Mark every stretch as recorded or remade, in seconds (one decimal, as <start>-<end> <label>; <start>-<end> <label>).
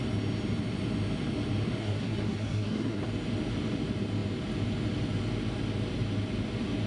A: 0.0-1.8 recorded; 1.8-3.0 remade; 3.0-6.9 recorded